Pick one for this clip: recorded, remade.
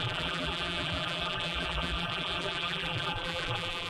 remade